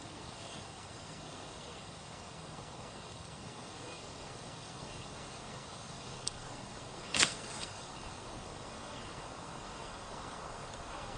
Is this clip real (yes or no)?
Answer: no